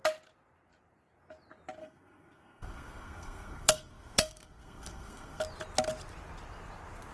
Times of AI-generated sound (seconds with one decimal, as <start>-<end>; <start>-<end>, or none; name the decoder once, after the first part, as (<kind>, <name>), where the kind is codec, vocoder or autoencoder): 1.8-5.4 (codec, SNAC)